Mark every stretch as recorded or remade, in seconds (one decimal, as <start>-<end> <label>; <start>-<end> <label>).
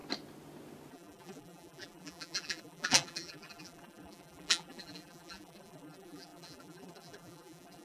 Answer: 0.0-0.9 recorded; 0.9-7.8 remade